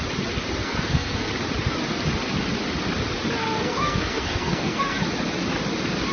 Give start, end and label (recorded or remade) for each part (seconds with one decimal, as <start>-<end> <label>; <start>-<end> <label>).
0.0-0.6 recorded; 0.6-1.3 remade; 1.3-3.4 recorded; 3.4-5.0 remade; 5.0-6.1 recorded